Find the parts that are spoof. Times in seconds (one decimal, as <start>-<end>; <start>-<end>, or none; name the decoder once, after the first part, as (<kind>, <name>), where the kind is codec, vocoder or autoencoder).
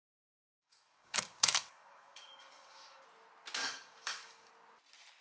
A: 0.0-3.0 (codec, DAC); 3.6-4.5